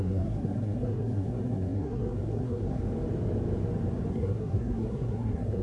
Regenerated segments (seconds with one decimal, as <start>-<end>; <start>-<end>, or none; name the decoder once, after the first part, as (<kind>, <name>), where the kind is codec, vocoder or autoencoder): 0.0-2.8 (codec, SNAC); 4.1-5.6